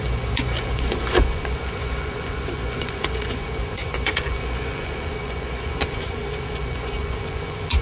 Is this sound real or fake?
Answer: fake